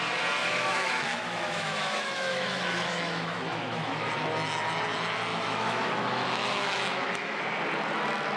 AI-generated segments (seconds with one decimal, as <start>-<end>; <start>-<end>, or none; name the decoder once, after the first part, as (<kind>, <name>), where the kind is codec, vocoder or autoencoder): 0.4-4.1 (autoencoder, DAC-VAE); 5.3-7.4

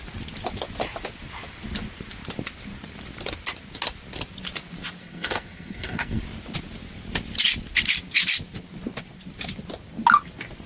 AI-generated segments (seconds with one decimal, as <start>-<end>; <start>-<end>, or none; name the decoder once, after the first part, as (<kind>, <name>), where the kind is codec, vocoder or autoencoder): 5.0-6.2 (codec, SNAC)

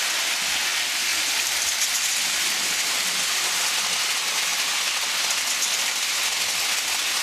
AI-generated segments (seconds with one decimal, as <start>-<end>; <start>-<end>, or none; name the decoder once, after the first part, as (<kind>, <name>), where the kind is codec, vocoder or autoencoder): 1.1-1.8 (vocoder, BigVGAN v2)